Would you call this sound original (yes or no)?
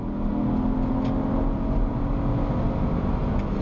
yes